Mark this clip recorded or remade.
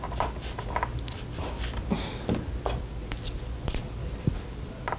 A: recorded